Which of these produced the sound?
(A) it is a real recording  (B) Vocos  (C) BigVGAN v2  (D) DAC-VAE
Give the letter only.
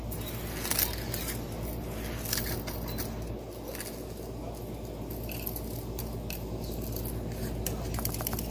A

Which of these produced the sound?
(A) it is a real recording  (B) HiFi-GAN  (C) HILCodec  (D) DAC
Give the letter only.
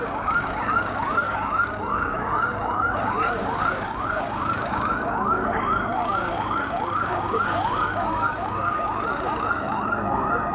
D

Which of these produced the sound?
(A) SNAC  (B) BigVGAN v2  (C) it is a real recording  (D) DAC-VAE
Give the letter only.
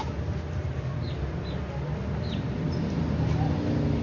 C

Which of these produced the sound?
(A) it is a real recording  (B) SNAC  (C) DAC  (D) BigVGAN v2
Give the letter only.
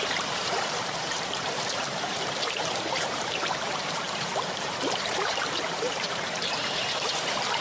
D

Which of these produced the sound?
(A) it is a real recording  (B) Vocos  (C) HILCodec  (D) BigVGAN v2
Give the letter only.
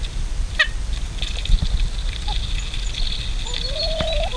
A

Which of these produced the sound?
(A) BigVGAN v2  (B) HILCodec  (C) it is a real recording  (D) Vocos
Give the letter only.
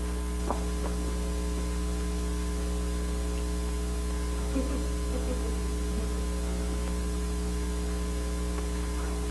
C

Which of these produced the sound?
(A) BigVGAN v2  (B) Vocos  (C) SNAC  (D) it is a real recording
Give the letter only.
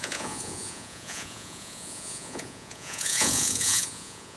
B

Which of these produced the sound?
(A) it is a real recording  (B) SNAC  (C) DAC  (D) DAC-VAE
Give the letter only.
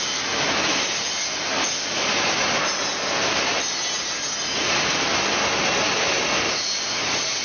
A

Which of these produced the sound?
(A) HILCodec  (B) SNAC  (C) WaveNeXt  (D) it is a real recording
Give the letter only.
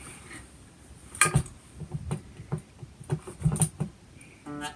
D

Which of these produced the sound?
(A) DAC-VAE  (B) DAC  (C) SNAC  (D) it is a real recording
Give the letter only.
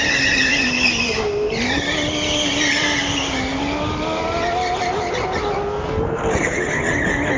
D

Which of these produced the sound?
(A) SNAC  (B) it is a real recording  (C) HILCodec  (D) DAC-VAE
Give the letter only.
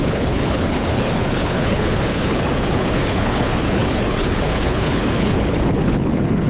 C